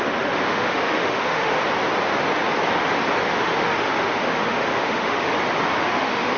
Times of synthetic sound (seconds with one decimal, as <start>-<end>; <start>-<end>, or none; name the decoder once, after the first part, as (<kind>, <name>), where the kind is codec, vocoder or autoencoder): 0.0-1.5 (autoencoder, DAC-VAE); 3.3-5.3; 5.8-6.4